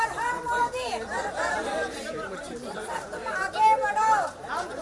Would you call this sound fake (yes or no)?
yes